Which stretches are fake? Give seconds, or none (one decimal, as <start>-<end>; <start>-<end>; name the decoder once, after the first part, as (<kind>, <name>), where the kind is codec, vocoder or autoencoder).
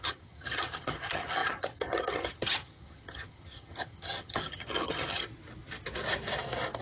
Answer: 0.0-5.3 (vocoder, HiFi-GAN)